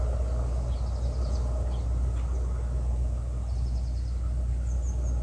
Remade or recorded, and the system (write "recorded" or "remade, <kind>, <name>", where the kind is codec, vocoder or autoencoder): recorded